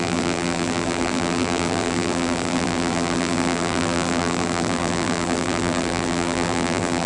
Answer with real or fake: fake